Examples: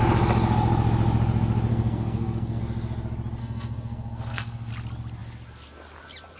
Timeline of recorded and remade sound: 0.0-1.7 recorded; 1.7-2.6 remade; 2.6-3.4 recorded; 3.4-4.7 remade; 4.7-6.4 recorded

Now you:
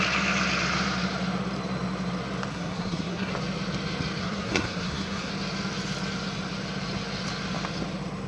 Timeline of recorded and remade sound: 0.0-2.5 recorded; 2.5-3.3 remade; 3.3-4.2 recorded; 4.2-5.3 remade; 5.3-8.3 recorded

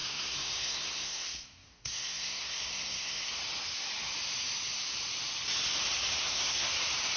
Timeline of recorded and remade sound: 0.0-3.3 remade; 3.3-6.2 recorded; 6.2-6.7 remade; 6.7-7.2 recorded

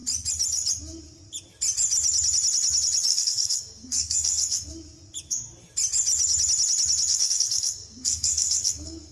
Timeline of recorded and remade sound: 0.0-3.1 recorded; 3.1-4.7 remade; 4.7-7.1 recorded; 7.1-9.1 remade